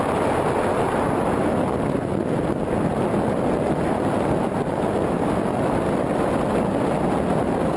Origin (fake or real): real